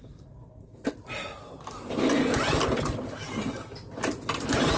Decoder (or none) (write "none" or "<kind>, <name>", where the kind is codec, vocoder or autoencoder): none